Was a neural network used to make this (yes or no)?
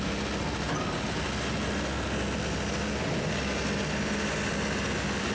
no